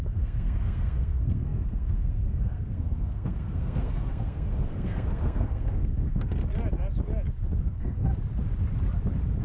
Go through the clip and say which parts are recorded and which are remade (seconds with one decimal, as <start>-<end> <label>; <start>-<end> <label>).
0.0-6.4 remade; 6.4-7.6 recorded; 7.6-8.1 remade; 8.1-9.4 recorded